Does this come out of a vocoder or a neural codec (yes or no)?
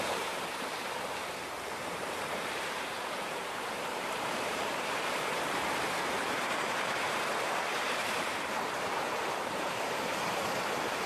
yes